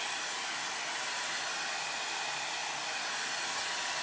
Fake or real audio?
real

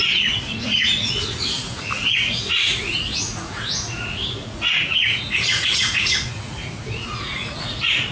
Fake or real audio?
fake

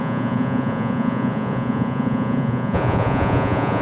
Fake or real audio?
fake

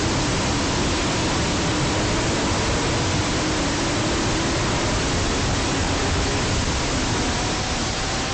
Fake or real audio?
real